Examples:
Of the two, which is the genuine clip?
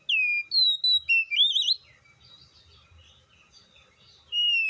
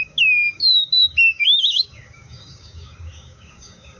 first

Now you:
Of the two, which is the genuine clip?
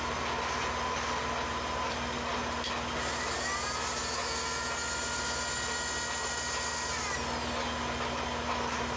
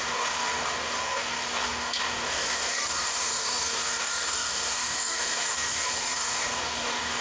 first